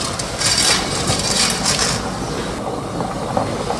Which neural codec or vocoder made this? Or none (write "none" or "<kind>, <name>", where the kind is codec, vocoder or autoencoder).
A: none